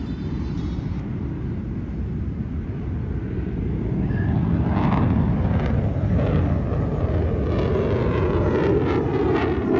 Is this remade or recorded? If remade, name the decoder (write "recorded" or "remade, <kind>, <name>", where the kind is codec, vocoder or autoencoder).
recorded